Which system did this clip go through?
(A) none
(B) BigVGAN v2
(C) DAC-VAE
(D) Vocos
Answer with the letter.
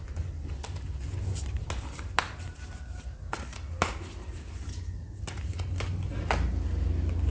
A